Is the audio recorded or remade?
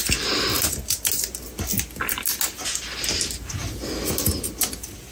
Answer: recorded